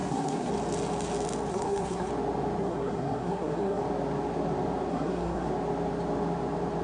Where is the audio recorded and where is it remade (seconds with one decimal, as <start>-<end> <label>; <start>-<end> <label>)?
0.0-0.5 remade; 0.5-1.5 recorded; 1.5-2.1 remade; 2.1-2.6 recorded; 2.6-3.8 remade; 3.8-4.9 recorded; 4.9-5.5 remade; 5.5-6.8 recorded